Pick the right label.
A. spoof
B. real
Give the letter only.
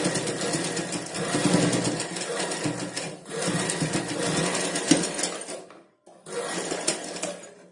B